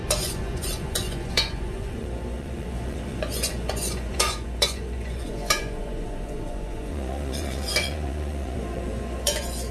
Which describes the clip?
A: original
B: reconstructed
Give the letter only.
B